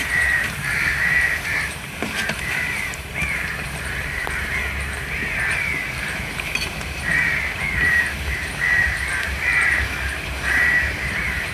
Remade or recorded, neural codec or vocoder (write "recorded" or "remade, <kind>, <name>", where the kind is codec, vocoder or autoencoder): remade, vocoder, BigVGAN v2